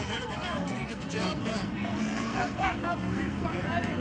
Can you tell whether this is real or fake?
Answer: fake